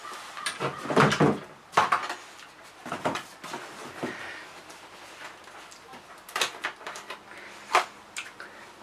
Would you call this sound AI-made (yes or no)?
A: no